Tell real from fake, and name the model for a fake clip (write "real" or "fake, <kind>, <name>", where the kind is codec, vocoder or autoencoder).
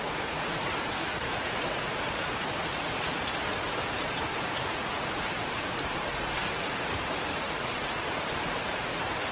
fake, vocoder, Vocos